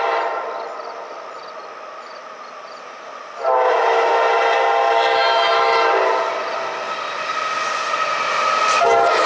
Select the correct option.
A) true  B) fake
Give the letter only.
A